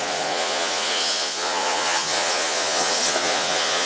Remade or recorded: remade